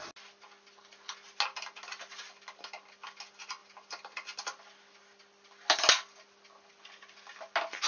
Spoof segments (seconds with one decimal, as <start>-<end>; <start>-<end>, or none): none